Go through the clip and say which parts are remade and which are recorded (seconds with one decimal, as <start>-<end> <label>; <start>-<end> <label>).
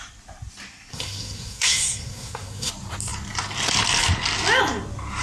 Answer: 0.0-0.9 recorded; 0.9-2.7 remade; 2.7-5.2 recorded